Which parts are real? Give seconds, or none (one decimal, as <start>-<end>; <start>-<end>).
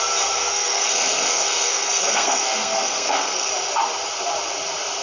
0.0-0.5; 3.5-5.0